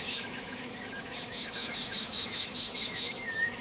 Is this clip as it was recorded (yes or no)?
no